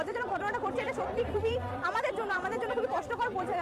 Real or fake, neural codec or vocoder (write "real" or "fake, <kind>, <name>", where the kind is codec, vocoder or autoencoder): fake, vocoder, BigVGAN v2